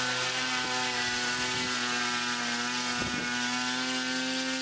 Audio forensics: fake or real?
real